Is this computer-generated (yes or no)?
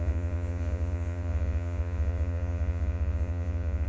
yes